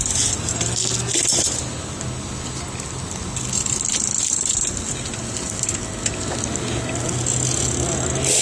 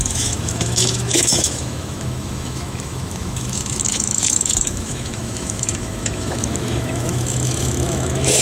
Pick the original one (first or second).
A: first